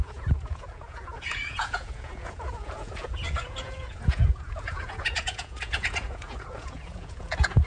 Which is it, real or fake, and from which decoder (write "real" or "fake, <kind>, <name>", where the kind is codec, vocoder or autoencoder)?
fake, vocoder, Vocos